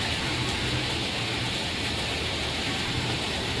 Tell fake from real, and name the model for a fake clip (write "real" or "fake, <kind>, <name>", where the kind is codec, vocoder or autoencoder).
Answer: fake, vocoder, BigVGAN v2